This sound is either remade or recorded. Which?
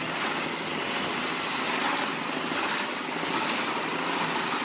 recorded